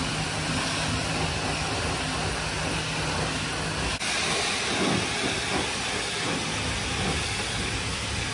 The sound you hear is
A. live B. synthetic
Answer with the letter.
A